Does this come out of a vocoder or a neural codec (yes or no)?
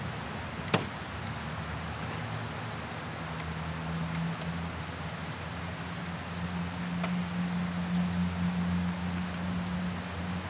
no